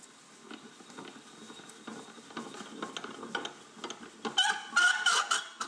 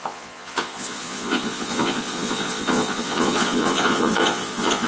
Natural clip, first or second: first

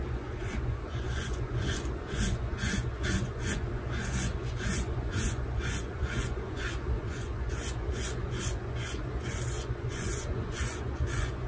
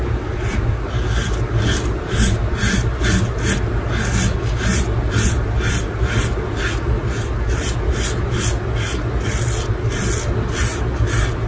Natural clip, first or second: second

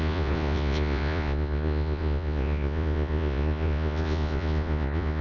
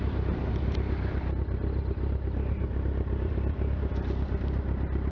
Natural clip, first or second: second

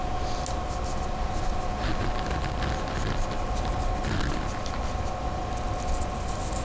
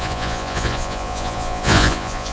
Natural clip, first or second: first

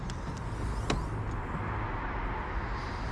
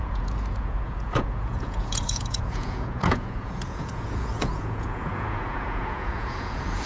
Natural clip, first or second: first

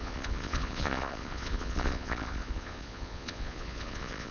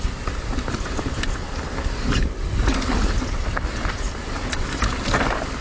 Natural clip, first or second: second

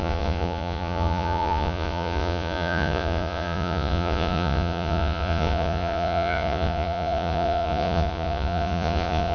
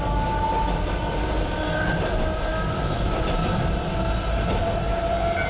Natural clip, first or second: second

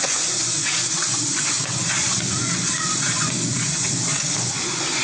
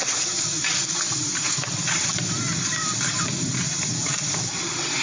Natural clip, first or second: second